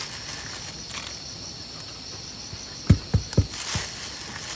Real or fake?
real